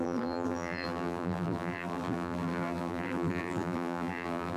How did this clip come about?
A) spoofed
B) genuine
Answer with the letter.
A